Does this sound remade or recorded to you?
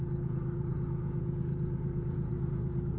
remade